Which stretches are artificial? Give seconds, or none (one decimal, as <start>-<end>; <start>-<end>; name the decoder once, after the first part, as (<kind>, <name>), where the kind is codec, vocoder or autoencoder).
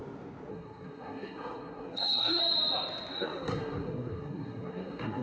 0.5-2.4 (codec, SNAC); 3.1-5.2